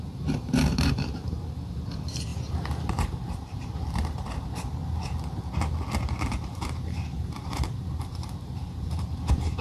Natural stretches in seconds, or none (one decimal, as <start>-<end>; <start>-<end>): 4.8-6.2